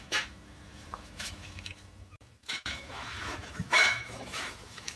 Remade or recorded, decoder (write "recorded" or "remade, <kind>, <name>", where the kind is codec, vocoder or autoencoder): remade, autoencoder, DAC-VAE